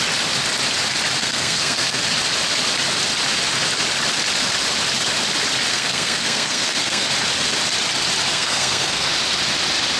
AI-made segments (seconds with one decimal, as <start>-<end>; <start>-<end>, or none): 1.2-2.0; 5.7-7.1; 8.3-9.1